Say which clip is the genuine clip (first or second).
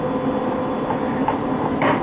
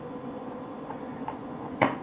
first